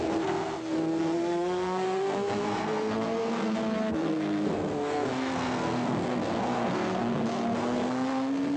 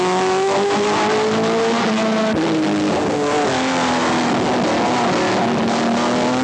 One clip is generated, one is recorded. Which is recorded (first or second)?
second